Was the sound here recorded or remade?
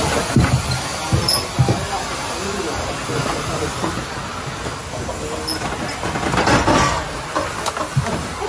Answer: recorded